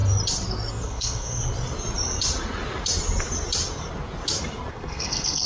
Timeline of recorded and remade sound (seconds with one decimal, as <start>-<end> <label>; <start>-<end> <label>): 0.0-0.7 recorded; 0.7-1.4 remade; 1.4-4.7 recorded; 4.7-5.5 remade